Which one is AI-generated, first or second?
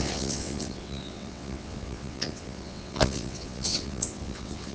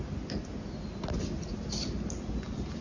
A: first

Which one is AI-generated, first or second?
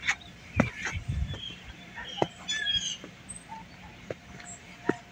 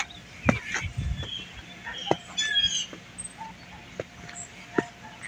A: first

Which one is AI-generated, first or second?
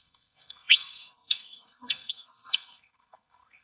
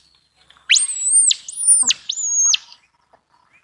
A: first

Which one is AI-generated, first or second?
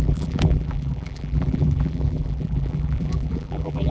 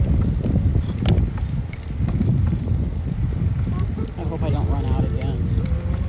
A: first